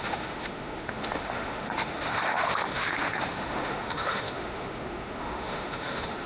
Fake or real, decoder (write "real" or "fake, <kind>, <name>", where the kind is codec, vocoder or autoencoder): fake, autoencoder, DAC-VAE